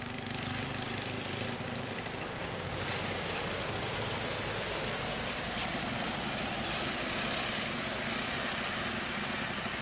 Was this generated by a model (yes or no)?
yes